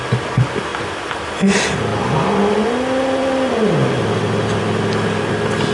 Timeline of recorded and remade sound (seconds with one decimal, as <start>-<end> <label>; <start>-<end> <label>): 0.0-5.7 recorded